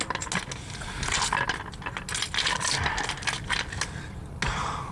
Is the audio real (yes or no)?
yes